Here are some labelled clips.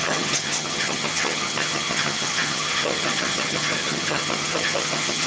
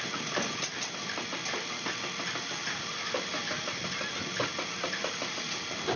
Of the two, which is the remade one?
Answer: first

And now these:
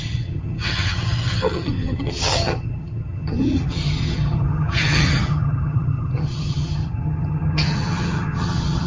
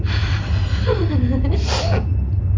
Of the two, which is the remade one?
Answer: first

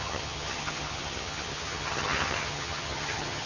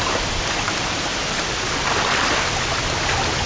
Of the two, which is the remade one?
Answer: first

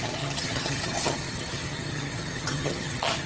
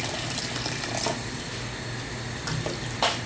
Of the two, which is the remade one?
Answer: first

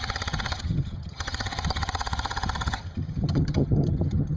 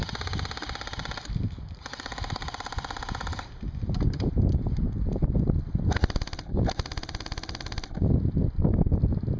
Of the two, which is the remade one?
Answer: first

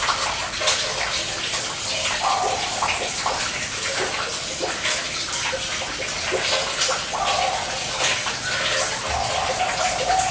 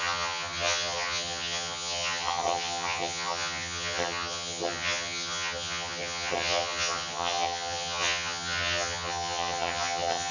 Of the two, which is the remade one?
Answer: second